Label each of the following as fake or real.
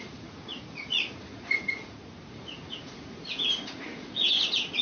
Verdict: fake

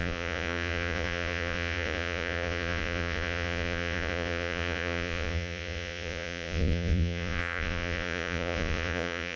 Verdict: fake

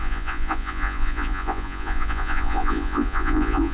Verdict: fake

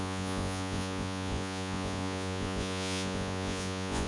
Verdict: fake